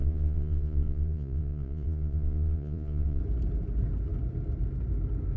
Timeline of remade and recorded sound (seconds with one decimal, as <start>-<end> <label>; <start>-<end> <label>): 0.0-3.2 remade; 3.2-5.4 recorded